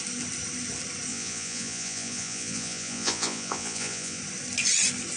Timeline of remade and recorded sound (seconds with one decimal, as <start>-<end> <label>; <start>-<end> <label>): 0.0-1.1 recorded; 1.1-4.2 remade; 4.2-5.2 recorded